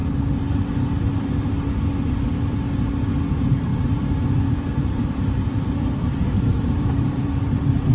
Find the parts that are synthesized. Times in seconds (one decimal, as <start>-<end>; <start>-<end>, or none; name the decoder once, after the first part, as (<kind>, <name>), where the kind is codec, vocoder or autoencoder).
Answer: 3.3-7.9 (vocoder, BigVGAN v2)